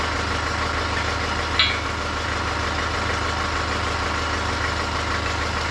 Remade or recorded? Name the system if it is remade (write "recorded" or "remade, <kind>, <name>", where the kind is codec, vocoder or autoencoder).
recorded